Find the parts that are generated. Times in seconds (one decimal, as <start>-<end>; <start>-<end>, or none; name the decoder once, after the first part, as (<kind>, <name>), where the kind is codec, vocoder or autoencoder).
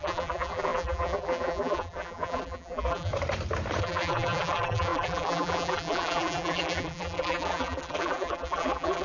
0.0-3.1 (vocoder, BigVGAN v2); 3.8-9.0